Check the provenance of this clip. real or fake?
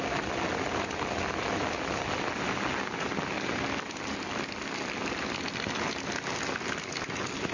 real